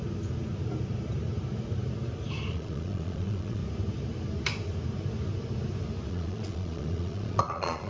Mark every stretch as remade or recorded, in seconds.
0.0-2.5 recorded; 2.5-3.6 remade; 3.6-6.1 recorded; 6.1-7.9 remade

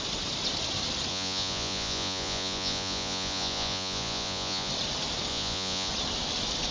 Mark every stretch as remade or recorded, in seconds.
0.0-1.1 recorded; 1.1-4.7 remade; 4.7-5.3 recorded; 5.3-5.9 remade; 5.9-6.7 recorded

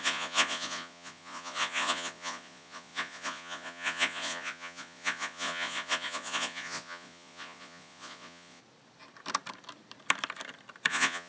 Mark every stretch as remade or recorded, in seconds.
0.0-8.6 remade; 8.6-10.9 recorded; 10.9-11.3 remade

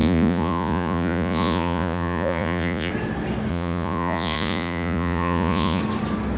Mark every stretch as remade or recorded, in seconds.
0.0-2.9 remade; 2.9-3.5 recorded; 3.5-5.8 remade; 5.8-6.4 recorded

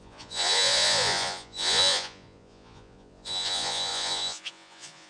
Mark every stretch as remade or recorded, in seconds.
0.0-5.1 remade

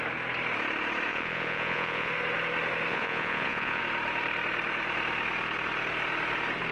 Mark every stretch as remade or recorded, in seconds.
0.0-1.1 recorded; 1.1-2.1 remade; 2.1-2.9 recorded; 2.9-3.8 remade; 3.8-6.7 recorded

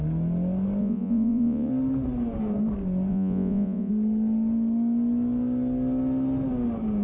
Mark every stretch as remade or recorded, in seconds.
0.0-0.8 recorded; 0.8-1.7 remade; 1.7-3.1 recorded; 3.1-3.9 remade; 3.9-7.0 recorded